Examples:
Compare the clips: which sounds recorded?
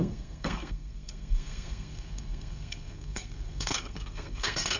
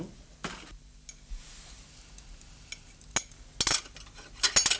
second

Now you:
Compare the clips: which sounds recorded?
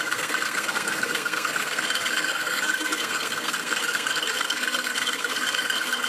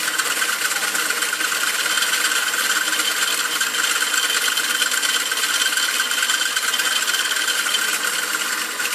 second